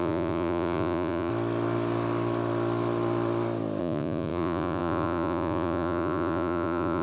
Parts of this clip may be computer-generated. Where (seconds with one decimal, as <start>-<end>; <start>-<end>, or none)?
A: 0.0-1.3; 3.8-7.0